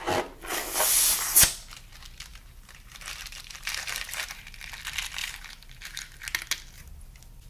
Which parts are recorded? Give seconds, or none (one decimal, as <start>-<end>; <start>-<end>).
0.0-2.3; 4.7-5.2; 6.0-7.5